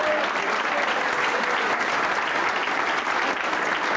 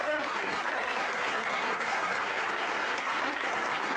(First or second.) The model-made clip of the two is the second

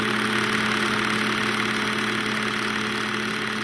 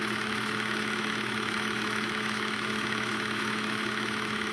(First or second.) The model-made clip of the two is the second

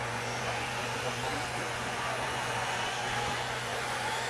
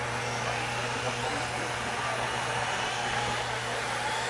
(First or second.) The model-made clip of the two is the first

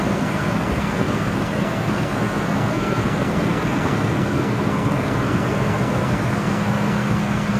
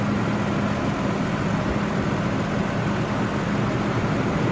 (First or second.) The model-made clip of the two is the first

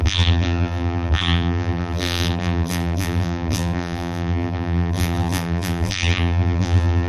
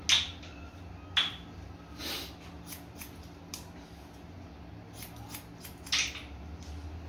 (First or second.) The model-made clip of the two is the first